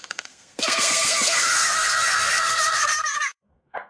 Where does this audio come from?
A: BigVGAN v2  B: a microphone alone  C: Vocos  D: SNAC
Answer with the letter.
D